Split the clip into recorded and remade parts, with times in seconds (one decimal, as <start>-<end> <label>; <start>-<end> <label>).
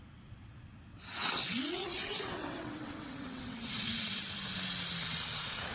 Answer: 0.0-0.9 recorded; 0.9-4.3 remade; 4.3-5.7 recorded